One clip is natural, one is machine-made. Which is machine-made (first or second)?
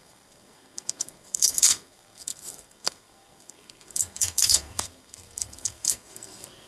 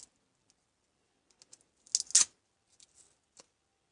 first